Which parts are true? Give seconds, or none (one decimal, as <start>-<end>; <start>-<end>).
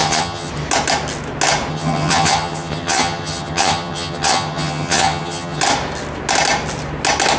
0.5-1.7; 5.6-7.4